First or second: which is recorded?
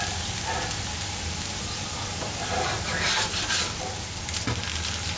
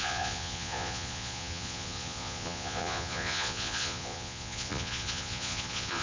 first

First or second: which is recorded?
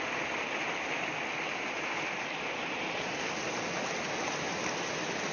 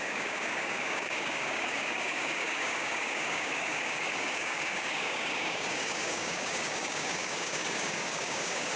first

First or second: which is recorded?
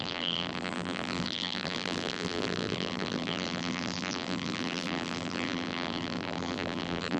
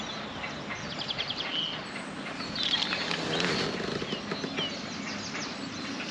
second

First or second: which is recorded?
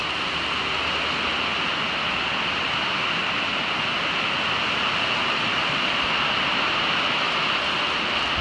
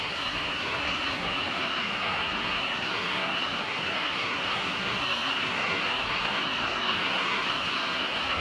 first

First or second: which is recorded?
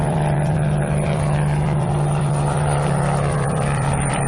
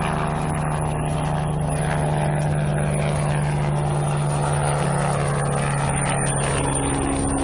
second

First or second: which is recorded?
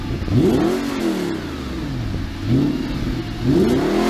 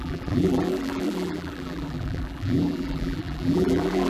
first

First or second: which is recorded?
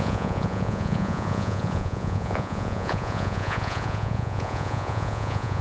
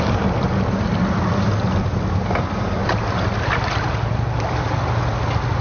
second